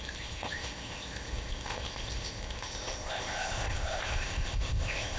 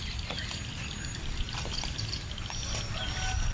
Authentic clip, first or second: second